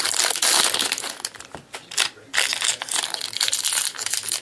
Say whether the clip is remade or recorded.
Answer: recorded